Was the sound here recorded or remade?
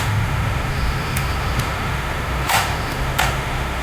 remade